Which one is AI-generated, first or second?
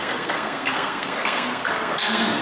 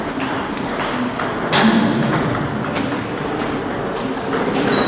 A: first